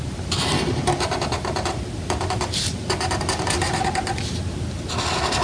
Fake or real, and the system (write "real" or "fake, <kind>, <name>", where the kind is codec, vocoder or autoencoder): real